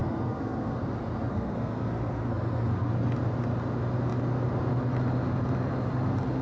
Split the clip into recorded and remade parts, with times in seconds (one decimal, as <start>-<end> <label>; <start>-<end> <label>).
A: 0.0-0.8 remade; 0.8-1.3 recorded; 1.3-2.9 remade; 2.9-6.4 recorded